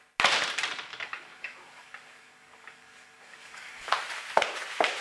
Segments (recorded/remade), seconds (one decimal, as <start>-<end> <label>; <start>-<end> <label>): 0.0-0.9 recorded; 0.9-3.9 remade; 3.9-5.0 recorded